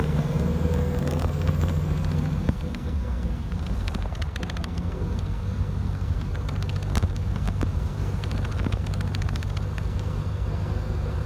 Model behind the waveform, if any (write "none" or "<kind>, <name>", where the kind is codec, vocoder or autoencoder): codec, SNAC